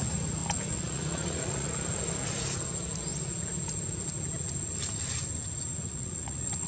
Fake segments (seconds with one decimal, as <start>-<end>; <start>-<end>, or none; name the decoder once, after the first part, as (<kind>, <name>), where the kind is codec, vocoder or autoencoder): 0.4-1.7 (vocoder, Vocos); 5.8-6.7